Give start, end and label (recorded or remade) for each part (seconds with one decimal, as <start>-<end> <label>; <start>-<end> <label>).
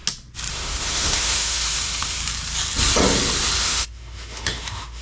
0.0-0.5 recorded; 0.5-2.2 remade; 2.2-3.6 recorded; 3.6-5.0 remade